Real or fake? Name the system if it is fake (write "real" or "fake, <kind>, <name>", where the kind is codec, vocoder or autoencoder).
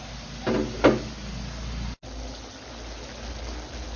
real